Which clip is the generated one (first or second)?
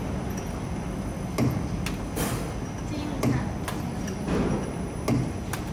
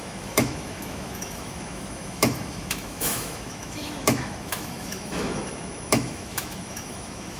second